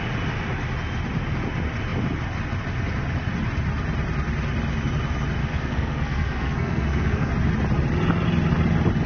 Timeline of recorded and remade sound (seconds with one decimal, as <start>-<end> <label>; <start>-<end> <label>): 0.0-5.4 recorded; 5.4-7.3 remade; 7.3-9.1 recorded